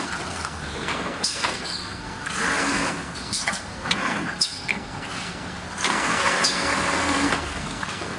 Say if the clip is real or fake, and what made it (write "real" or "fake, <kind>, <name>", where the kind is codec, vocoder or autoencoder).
fake, codec, SNAC